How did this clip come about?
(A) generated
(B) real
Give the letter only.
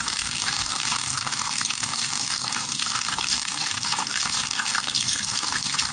A